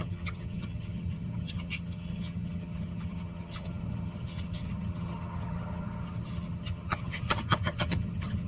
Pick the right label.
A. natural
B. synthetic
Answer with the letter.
B